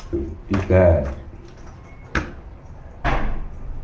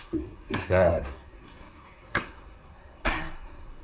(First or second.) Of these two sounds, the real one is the first